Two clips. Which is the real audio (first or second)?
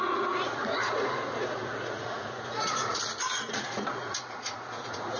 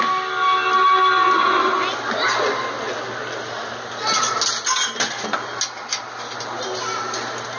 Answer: second